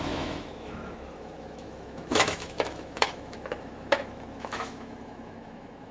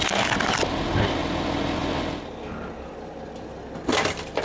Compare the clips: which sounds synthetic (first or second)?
first